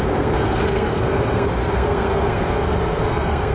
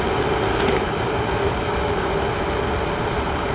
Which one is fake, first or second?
first